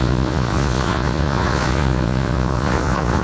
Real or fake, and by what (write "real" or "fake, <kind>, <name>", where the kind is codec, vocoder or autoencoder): fake, vocoder, Vocos